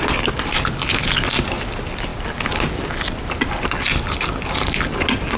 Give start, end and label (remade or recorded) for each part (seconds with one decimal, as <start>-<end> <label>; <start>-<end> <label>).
0.0-5.4 recorded